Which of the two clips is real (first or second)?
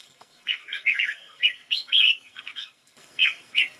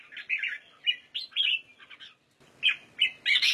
second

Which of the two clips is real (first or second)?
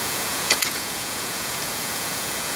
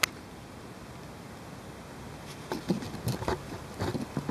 second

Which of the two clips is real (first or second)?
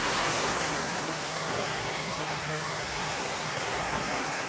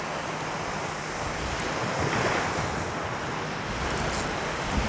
second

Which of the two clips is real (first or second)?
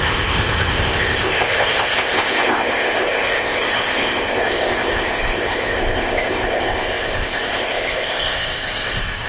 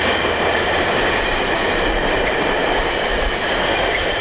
second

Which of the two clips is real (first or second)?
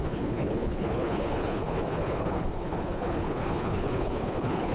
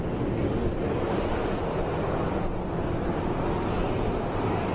second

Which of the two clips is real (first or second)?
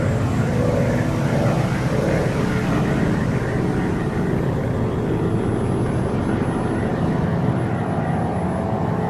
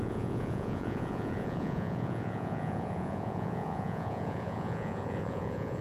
first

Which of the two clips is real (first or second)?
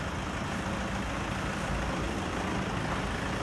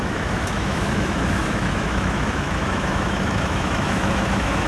first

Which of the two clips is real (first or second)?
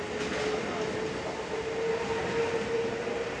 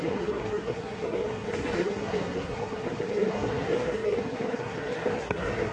first